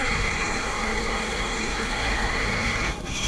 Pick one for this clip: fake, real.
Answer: fake